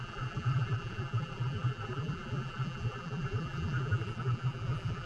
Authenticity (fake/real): fake